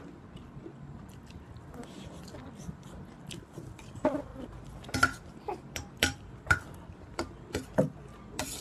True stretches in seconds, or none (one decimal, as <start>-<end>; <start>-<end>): 4.3-5.4